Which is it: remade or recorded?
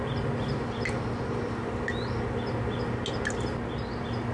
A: recorded